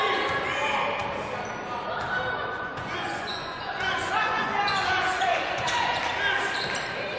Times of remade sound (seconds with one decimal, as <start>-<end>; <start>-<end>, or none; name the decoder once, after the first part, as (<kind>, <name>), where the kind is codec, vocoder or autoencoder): 2.4-6.0 (vocoder, Vocos)